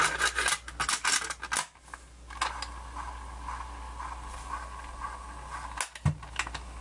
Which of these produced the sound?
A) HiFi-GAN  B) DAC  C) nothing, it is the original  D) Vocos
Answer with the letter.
C